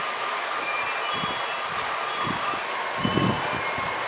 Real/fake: real